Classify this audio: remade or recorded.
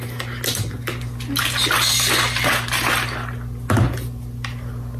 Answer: recorded